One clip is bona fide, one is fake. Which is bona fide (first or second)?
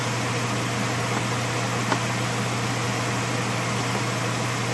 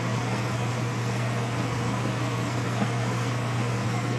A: first